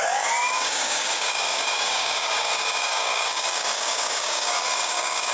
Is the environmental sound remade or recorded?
remade